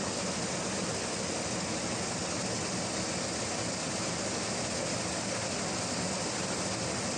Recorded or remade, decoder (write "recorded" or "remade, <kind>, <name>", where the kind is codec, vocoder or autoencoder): recorded